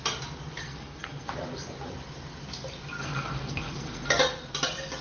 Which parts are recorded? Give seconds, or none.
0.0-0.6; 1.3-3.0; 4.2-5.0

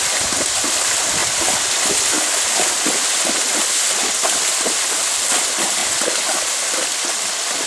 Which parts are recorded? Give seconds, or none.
0.0-7.7